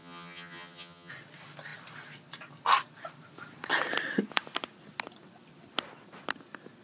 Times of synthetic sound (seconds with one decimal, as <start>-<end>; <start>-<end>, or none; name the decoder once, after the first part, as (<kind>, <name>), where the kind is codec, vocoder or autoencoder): 0.0-1.1 (vocoder, HiFi-GAN)